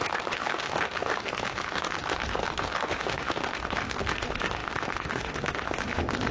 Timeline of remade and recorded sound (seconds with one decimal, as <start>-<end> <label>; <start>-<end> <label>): 0.0-6.3 remade